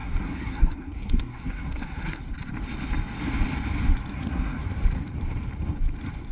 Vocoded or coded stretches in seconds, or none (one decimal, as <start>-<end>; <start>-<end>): 0.0-2.2; 4.1-4.7